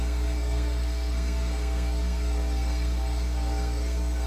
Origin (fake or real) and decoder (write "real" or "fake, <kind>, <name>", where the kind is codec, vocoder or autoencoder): fake, codec, SNAC